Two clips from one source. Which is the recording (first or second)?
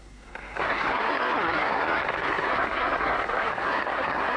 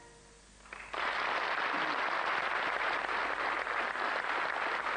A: second